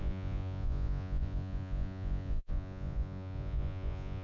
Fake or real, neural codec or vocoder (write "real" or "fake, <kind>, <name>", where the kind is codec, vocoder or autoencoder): fake, vocoder, Vocos